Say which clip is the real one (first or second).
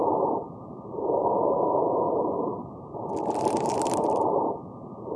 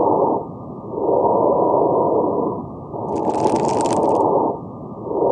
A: second